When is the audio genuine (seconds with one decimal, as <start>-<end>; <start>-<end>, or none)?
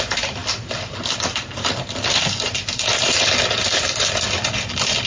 0.0-5.1